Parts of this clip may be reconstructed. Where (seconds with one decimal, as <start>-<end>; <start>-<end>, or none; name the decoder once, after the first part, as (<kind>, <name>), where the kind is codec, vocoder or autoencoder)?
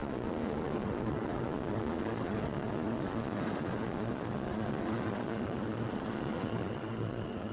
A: 0.0-7.5 (vocoder, Vocos)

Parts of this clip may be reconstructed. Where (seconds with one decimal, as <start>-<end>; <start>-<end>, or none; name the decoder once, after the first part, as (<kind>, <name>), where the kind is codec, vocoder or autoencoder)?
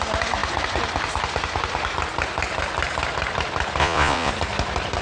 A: 3.8-4.3 (vocoder, Vocos)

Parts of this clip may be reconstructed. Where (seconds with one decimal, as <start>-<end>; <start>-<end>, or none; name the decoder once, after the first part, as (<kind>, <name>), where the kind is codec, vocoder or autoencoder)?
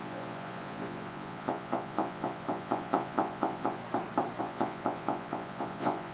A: 0.0-3.8 (vocoder, Vocos); 4.4-6.1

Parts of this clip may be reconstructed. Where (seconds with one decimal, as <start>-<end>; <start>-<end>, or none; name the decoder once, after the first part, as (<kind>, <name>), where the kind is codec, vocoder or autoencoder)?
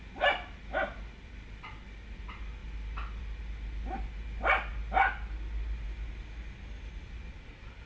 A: none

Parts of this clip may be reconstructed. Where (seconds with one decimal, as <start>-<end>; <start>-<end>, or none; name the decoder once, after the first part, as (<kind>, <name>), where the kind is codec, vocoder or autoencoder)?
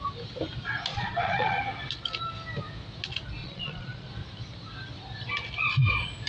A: 0.9-1.6 (vocoder, Vocos); 3.4-4.1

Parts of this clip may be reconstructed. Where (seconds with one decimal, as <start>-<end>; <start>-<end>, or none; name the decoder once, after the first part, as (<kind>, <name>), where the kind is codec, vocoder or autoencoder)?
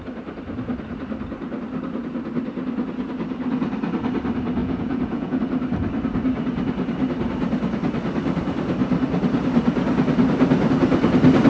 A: 4.6-5.4 (vocoder, Vocos)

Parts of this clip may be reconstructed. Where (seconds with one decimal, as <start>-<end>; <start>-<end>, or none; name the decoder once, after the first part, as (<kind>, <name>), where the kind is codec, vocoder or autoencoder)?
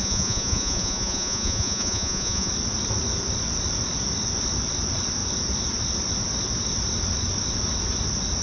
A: 0.0-2.5 (vocoder, Vocos)